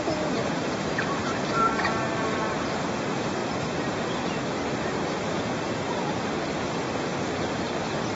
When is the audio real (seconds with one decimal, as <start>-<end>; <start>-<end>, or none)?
0.0-0.4; 1.3-8.1